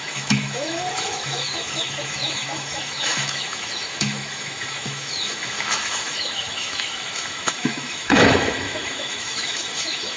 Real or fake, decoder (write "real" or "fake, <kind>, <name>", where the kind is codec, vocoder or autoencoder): fake, autoencoder, DAC-VAE